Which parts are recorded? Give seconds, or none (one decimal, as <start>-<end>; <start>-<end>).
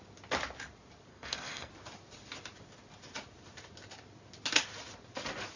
0.0-1.1; 1.7-5.6